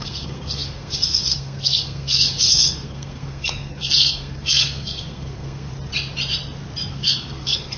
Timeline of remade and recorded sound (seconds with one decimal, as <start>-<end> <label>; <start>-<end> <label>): 0.0-5.7 remade; 5.7-6.9 recorded; 6.9-7.8 remade